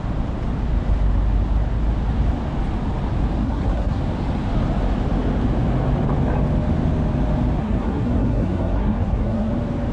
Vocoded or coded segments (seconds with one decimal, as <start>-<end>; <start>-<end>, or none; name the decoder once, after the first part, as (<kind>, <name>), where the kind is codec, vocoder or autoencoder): 3.4-4.0 (codec, SNAC); 7.6-9.5